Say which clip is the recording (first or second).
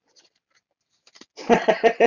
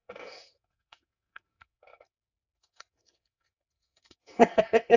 first